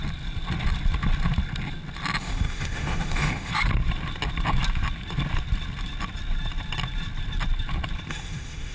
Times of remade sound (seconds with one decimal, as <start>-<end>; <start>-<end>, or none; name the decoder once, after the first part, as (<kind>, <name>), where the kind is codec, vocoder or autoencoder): 2.2-3.5 (autoencoder, DAC-VAE); 8.1-8.7